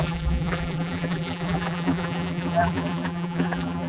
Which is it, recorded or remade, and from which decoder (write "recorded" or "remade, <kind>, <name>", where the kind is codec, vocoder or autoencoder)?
remade, vocoder, BigVGAN v2